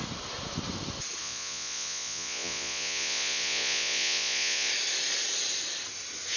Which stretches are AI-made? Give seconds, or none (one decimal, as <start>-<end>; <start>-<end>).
1.2-4.7